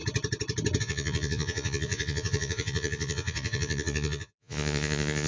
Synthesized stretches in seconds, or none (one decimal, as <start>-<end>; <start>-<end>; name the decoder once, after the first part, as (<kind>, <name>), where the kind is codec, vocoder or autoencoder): 0.8-5.3 (vocoder, Vocos)